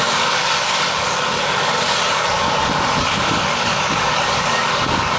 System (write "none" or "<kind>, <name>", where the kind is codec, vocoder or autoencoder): codec, DAC